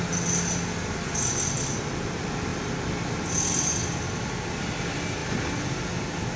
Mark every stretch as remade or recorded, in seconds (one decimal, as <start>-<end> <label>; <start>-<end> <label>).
0.0-6.4 recorded